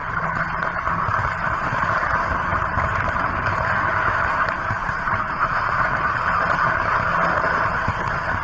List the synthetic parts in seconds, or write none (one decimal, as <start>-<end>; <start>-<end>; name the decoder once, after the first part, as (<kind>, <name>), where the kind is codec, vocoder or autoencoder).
4.8-5.9 (vocoder, Vocos)